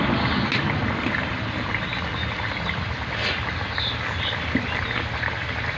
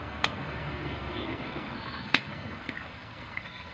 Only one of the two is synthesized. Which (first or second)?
second